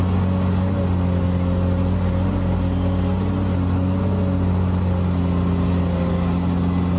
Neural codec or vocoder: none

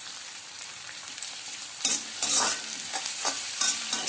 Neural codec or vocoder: vocoder, BigVGAN v2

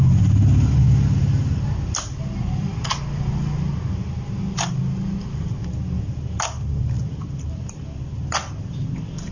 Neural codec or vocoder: none